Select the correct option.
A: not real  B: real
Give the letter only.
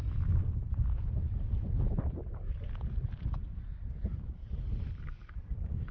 A